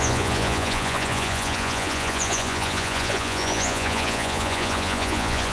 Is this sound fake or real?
fake